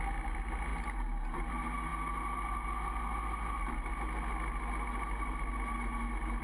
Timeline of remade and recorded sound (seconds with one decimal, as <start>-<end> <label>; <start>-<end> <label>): 0.0-6.4 recorded